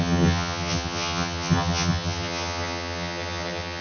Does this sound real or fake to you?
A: fake